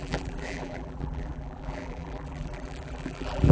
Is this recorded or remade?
remade